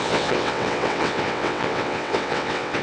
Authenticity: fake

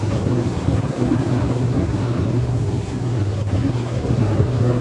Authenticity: fake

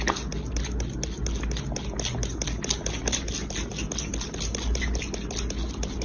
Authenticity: real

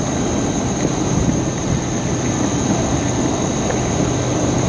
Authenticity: real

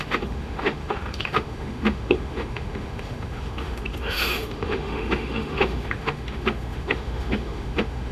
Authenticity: fake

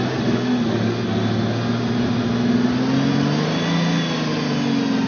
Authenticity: real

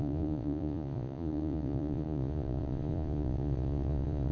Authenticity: fake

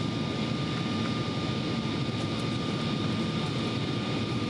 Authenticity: real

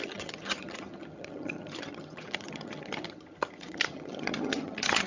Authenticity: fake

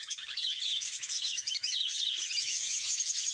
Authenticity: fake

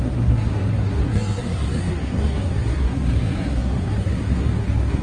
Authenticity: fake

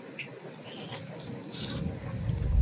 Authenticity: real